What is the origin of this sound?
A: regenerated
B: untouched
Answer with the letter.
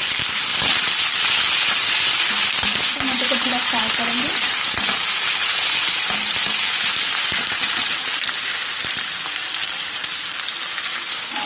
A